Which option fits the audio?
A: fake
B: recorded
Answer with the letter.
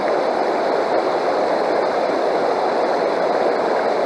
B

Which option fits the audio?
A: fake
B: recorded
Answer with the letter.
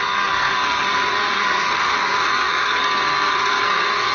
A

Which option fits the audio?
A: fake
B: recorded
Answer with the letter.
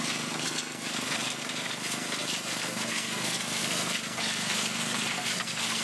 A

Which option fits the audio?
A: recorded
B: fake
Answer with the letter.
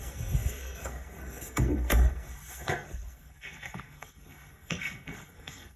B